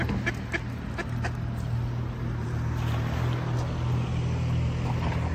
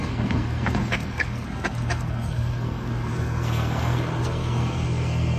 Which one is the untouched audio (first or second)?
first